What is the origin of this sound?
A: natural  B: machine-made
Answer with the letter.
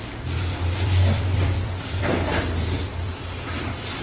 B